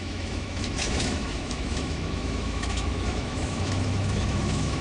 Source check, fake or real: fake